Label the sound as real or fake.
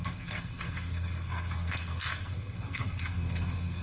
fake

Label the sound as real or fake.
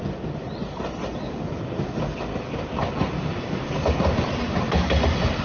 real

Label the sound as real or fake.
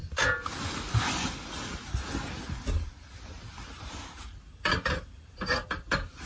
real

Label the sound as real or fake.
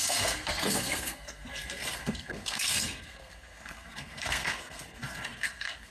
fake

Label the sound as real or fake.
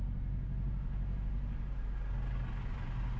real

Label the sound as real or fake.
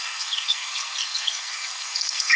fake